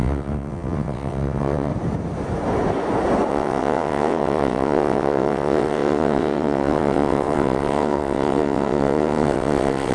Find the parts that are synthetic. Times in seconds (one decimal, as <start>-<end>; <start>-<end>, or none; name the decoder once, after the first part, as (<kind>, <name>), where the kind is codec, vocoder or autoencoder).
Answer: 0.0-1.7 (vocoder, WaveNeXt); 3.3-9.9